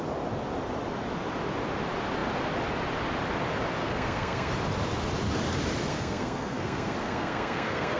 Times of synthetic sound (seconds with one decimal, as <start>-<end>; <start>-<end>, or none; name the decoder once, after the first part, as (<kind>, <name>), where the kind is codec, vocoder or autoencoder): 3.8-4.5 (codec, SNAC); 5.9-8.0